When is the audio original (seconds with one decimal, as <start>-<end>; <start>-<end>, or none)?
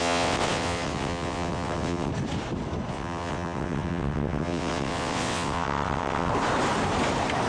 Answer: 2.1-2.9; 6.3-7.5